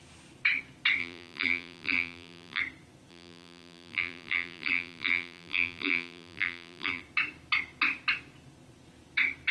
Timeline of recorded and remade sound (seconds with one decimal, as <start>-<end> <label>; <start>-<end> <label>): 0.0-1.0 recorded; 1.0-2.6 remade; 2.6-3.1 recorded; 3.1-7.0 remade; 7.0-9.5 recorded